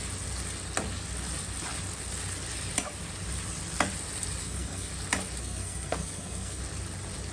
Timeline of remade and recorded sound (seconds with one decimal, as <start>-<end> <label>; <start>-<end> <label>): 0.0-4.4 recorded; 4.4-4.9 remade; 4.9-5.4 recorded; 5.4-6.6 remade; 6.6-7.3 recorded